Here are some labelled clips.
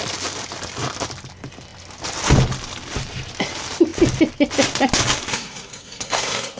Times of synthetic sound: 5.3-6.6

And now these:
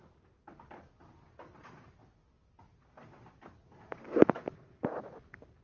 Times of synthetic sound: none

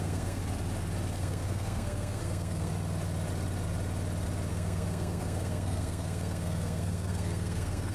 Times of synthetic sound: 0.0-0.4; 1.2-2.7; 4.5-7.9

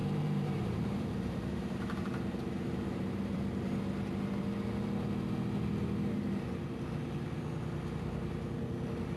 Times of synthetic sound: 0.0-3.4

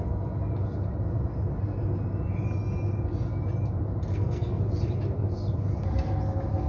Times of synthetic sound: 4.1-4.6

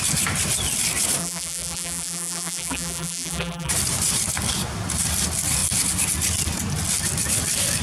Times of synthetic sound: 1.2-3.7

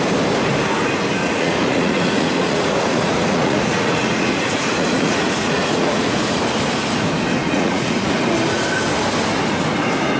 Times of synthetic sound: 1.2-6.4; 7.4-8.1

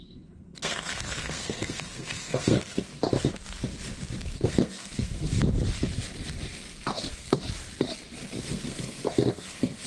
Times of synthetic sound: 0.0-2.9; 4.4-5.3; 6.9-7.4; 8.4-9.9